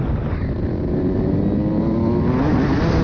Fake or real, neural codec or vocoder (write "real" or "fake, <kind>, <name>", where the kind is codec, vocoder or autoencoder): real